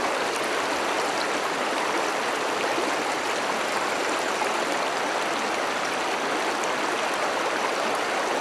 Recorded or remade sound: recorded